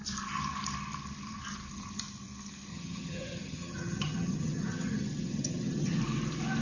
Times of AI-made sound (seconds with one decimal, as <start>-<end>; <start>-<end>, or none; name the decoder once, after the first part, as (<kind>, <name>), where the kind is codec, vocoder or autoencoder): 2.7-6.0 (vocoder, HiFi-GAN)